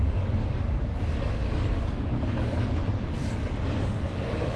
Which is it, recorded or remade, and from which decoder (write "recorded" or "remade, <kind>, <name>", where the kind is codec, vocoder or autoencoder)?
remade, codec, DAC